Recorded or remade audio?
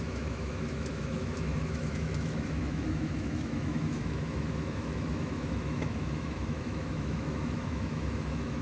remade